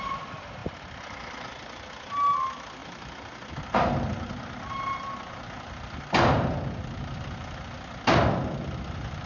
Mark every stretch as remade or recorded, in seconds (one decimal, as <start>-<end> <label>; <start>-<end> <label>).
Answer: 0.0-9.3 recorded